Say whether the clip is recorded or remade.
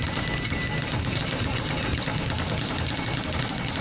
recorded